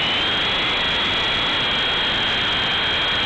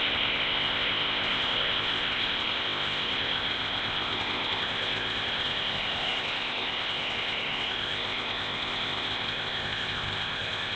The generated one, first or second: second